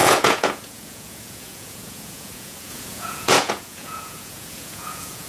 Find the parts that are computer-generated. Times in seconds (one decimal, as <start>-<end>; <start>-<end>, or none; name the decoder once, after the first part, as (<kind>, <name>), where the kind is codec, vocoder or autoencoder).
0.0-5.3 (vocoder, Vocos)